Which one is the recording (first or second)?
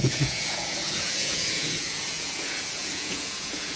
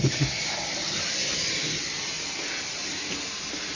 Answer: second